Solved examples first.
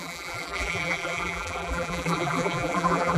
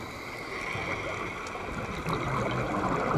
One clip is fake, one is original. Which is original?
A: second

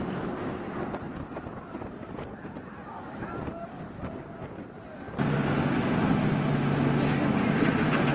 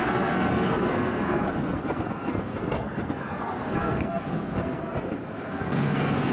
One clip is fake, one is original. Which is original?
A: first